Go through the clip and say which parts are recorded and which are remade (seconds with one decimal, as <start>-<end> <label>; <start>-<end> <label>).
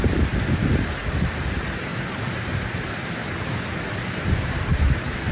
0.0-3.2 remade; 3.2-4.6 recorded; 4.6-5.3 remade